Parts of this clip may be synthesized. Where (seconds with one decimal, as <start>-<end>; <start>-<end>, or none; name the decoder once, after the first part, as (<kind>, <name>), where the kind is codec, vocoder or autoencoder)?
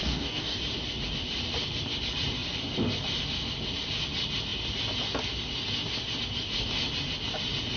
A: 0.0-0.6 (codec, DAC)